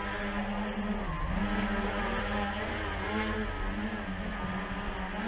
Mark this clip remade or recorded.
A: recorded